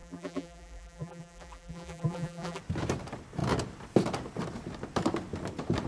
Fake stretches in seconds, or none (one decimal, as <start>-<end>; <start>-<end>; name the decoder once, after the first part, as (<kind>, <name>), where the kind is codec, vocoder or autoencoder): 0.0-2.6 (vocoder, BigVGAN v2)